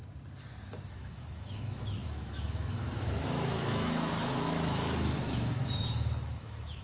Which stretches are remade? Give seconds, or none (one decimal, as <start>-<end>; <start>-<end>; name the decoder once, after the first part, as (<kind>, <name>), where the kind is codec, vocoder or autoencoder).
0.9-6.8 (autoencoder, DAC-VAE)